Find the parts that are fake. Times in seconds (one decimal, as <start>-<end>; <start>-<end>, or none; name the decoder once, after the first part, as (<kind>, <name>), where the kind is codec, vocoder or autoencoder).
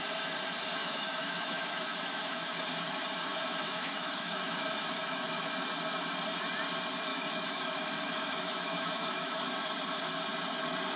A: 0.8-5.5 (autoencoder, DAC-VAE); 7.1-9.5